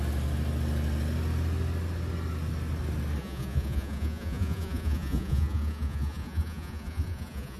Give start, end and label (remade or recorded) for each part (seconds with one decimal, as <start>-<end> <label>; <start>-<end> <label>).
0.0-3.2 recorded; 3.2-7.6 remade

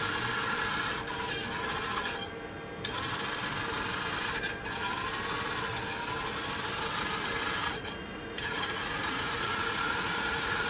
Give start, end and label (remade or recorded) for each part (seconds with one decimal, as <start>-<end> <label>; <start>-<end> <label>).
0.0-7.6 recorded; 7.6-10.7 remade